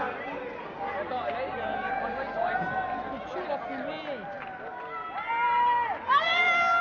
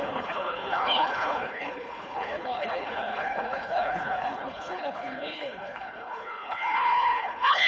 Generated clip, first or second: second